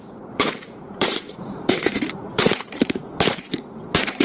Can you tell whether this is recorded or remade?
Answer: remade